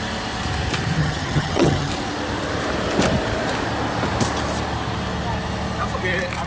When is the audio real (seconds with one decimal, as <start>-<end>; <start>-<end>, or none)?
0.0-1.0; 1.9-6.5